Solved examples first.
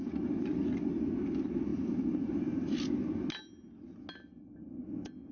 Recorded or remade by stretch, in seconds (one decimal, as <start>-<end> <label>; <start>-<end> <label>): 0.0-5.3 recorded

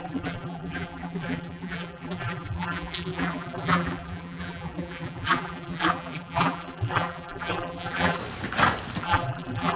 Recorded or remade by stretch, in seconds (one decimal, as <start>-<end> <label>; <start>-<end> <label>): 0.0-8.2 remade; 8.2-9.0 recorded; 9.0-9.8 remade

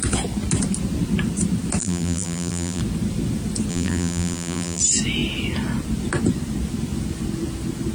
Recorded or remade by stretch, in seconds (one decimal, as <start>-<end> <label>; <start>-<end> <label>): 0.0-1.8 recorded; 1.8-2.8 remade; 2.8-3.7 recorded; 3.7-4.8 remade; 4.8-7.9 recorded

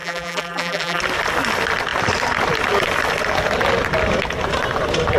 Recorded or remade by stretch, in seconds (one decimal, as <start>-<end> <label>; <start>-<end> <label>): 0.0-1.0 remade; 1.0-5.2 recorded

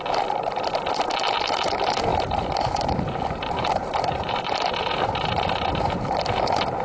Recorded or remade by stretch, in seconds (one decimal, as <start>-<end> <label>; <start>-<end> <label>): 0.0-2.1 recorded; 2.1-6.2 remade; 6.2-6.8 recorded